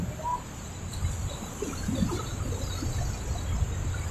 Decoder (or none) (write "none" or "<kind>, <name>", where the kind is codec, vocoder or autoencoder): none